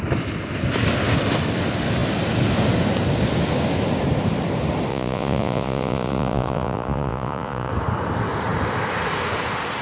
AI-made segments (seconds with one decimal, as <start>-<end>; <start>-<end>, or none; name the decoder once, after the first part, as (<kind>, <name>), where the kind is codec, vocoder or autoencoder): 4.9-7.7 (vocoder, Vocos)